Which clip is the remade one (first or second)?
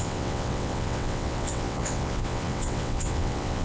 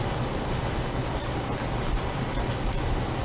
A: first